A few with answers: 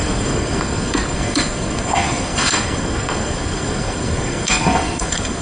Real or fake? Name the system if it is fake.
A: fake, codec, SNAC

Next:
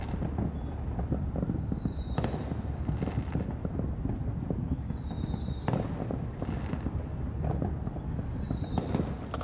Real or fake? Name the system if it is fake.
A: real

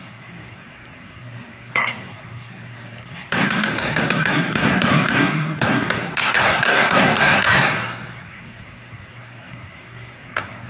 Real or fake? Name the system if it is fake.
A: fake, codec, SNAC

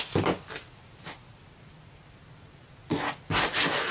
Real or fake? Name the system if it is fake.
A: real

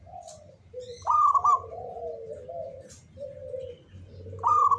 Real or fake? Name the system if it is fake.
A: real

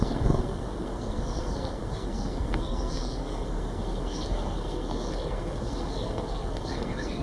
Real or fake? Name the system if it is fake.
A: fake, codec, SNAC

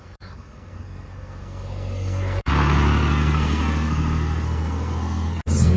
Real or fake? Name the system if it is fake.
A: fake, codec, SNAC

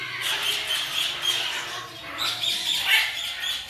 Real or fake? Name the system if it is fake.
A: real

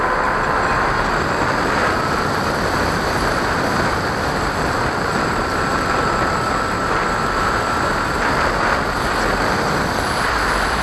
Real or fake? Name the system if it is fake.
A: real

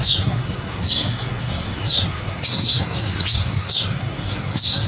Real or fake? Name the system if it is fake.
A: fake, codec, SNAC